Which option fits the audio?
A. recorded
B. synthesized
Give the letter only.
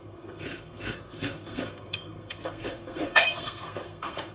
B